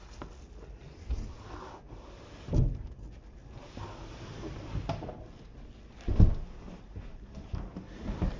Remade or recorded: recorded